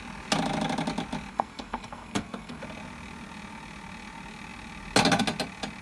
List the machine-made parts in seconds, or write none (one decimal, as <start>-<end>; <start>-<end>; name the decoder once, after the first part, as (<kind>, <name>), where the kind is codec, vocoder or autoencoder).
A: 1.3-2.6 (codec, SNAC)